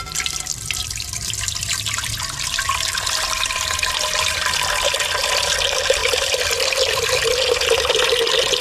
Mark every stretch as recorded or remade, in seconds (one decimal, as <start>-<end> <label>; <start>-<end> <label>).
0.0-0.5 recorded; 0.5-1.1 remade; 1.1-6.0 recorded; 6.0-7.2 remade; 7.2-8.6 recorded